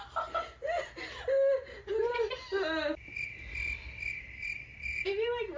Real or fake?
real